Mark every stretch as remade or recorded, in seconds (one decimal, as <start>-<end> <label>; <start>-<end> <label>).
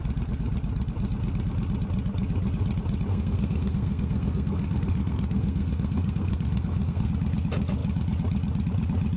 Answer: 0.0-3.1 recorded; 3.1-7.1 remade; 7.1-9.2 recorded